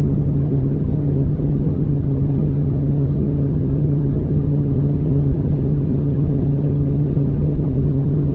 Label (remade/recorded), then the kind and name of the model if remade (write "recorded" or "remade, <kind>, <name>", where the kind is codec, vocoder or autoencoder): remade, vocoder, HiFi-GAN